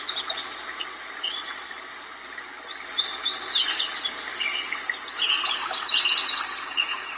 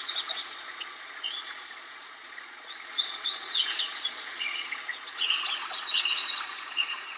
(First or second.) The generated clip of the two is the second